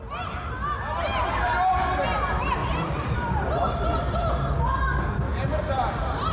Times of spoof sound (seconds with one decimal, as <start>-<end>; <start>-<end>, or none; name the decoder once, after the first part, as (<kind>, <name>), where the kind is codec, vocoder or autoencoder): 2.6-4.3 (vocoder, BigVGAN v2)